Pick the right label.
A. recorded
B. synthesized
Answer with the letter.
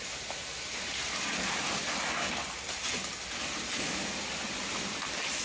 A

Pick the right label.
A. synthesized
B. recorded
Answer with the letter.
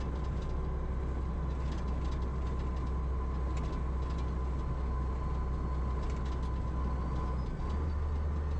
B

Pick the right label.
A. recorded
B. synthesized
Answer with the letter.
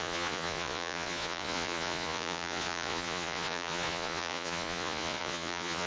B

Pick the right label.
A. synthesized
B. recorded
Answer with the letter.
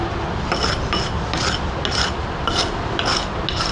B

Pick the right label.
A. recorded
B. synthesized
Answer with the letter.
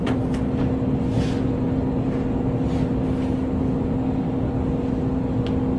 A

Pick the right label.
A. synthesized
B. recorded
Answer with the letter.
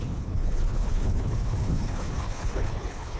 A